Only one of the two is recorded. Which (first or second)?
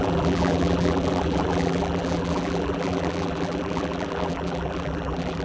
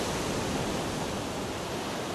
second